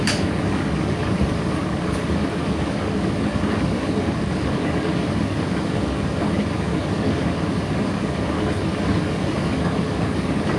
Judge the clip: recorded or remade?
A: remade